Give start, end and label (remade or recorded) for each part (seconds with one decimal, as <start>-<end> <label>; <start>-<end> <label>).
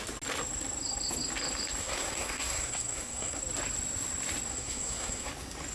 0.0-1.8 recorded; 1.8-3.4 remade; 3.4-4.5 recorded; 4.5-5.3 remade; 5.3-5.7 recorded